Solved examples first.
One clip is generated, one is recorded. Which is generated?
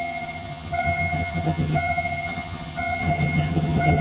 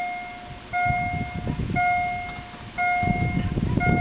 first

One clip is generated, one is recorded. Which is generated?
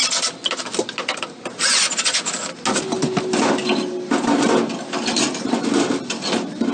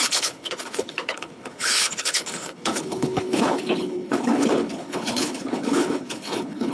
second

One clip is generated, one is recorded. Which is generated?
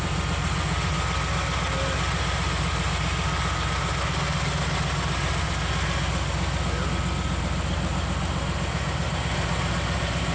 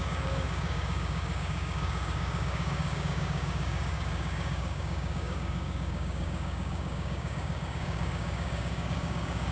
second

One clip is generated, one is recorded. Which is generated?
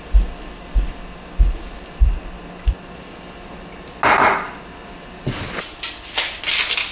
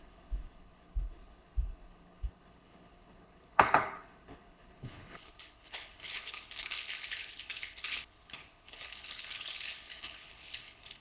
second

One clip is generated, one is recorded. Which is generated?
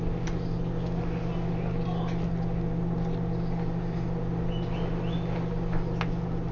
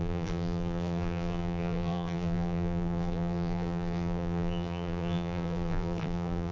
second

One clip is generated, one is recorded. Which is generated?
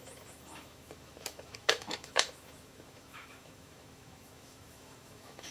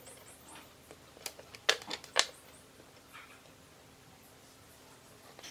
first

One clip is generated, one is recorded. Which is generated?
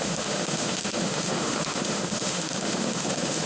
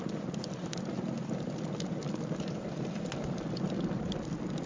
first